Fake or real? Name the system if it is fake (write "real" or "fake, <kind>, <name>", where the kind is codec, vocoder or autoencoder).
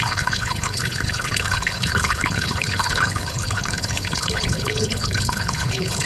fake, codec, HILCodec